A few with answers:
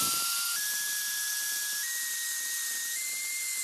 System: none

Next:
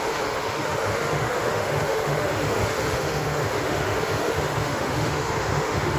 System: autoencoder, DAC-VAE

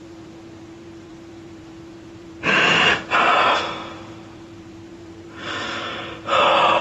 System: vocoder, BigVGAN v2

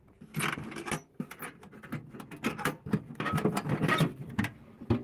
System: none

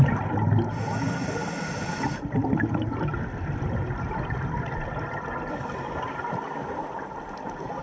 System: none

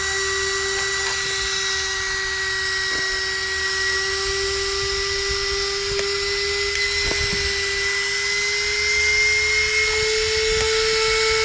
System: none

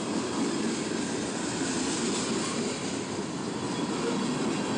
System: none